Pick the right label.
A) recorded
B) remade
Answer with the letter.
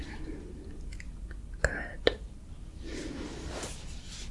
B